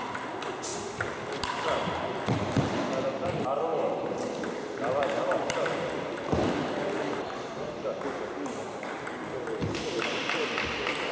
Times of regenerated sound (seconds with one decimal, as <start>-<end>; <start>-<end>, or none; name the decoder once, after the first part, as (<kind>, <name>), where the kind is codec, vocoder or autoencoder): 0.7-2.6 (vocoder, BigVGAN v2); 3.7-7.8